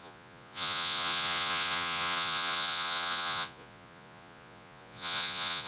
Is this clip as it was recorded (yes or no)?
no